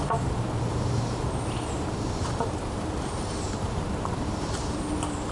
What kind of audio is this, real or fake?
fake